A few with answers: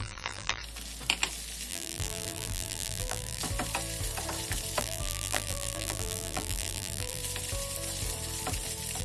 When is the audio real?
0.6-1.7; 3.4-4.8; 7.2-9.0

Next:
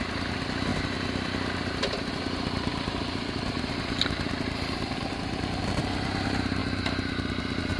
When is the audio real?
0.0-6.6

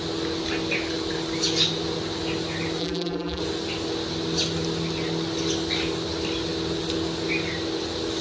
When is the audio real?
0.0-2.8; 3.4-8.2

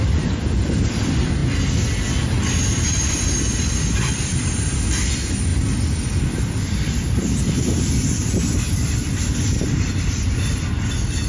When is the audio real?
1.4-2.7; 5.5-6.5

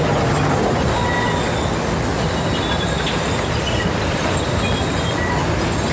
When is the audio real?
0.0-2.1; 4.9-5.9

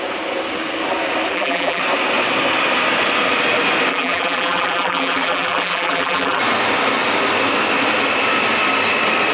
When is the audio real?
0.0-1.3; 1.8-3.9; 6.4-9.3